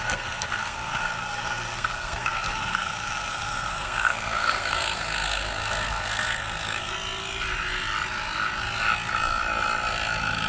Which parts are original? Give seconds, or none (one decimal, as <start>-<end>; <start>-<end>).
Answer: 6.9-10.5